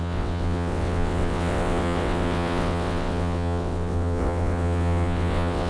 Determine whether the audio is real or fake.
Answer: fake